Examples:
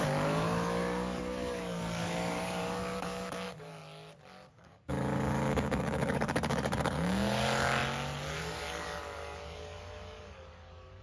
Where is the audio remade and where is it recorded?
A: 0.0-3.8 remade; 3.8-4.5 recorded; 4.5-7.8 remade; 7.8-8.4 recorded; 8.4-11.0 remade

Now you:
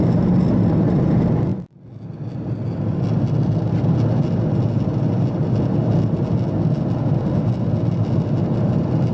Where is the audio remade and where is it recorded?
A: 0.0-9.1 recorded

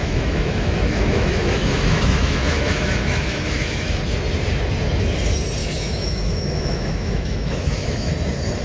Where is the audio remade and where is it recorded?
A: 0.0-4.0 remade; 4.0-5.6 recorded; 5.6-8.1 remade; 8.1-8.6 recorded

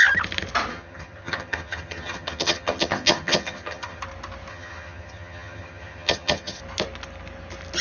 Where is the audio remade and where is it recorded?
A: 0.0-0.7 recorded; 0.7-4.0 remade; 4.0-4.5 recorded; 4.5-6.6 remade; 6.6-7.8 recorded

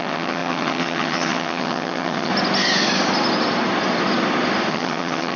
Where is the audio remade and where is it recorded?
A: 0.0-2.3 remade; 2.3-4.7 recorded; 4.7-5.4 remade

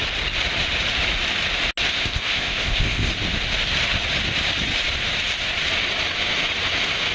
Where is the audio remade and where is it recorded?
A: 0.0-1.9 recorded; 1.9-3.1 remade; 3.1-7.1 recorded

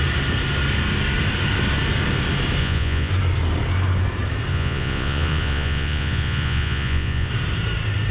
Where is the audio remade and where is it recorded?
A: 0.0-2.6 recorded; 2.6-3.1 remade; 3.1-4.5 recorded; 4.5-7.3 remade; 7.3-8.1 recorded

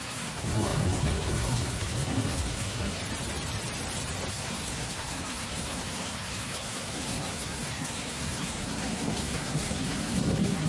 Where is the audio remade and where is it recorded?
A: 0.0-3.0 remade; 3.0-4.3 recorded; 4.3-10.7 remade